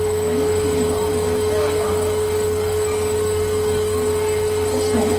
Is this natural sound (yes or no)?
no